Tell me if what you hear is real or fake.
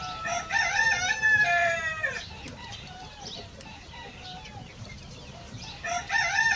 fake